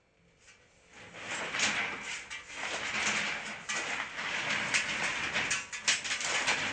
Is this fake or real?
real